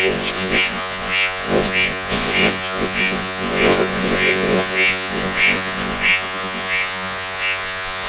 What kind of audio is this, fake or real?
fake